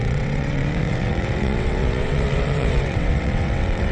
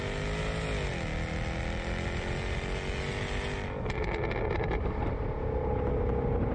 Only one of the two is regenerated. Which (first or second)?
first